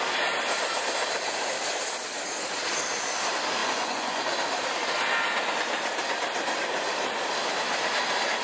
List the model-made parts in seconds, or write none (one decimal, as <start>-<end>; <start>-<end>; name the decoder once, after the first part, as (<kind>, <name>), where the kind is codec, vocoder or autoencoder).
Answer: 3.6-4.2 (vocoder, Vocos)